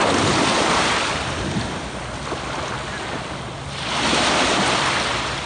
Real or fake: real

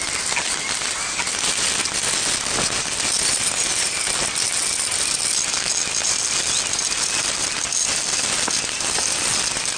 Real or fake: real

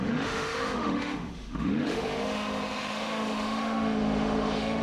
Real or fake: fake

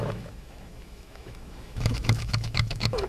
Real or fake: fake